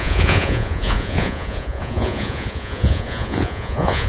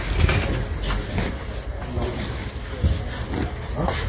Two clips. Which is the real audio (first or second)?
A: second